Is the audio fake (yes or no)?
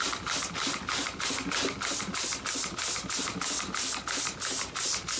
no